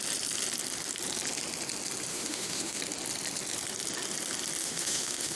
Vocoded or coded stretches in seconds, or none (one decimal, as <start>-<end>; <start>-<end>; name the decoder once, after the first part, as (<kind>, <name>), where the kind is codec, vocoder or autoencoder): 2.1-2.8 (autoencoder, DAC-VAE); 4.6-5.4